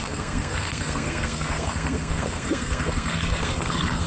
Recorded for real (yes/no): no